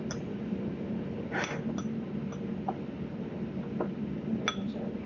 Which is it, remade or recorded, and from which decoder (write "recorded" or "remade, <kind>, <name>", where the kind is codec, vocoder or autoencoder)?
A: recorded